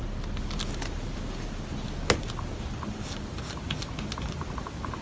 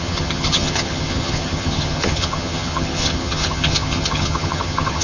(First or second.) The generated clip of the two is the second